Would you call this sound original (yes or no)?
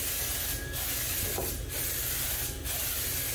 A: yes